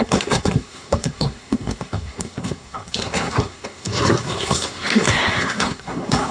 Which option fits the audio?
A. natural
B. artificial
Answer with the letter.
B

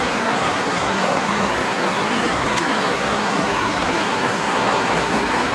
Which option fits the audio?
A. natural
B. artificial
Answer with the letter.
B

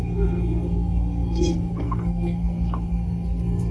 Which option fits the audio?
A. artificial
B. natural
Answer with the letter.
A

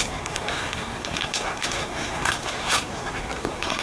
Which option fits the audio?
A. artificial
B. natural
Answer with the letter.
A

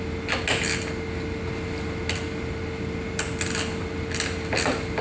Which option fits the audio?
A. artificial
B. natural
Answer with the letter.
B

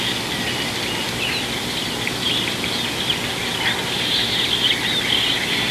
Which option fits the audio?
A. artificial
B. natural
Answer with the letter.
B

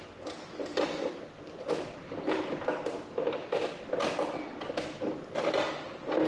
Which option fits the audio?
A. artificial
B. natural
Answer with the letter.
B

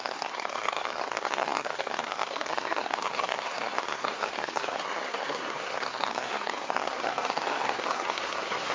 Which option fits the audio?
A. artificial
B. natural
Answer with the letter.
A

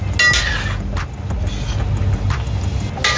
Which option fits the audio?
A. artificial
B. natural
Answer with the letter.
B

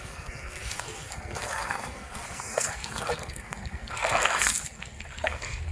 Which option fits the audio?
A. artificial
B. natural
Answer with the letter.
A